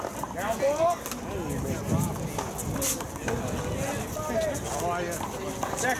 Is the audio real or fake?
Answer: real